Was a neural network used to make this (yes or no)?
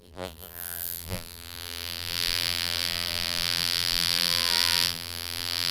yes